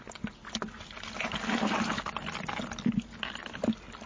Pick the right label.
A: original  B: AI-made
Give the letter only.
A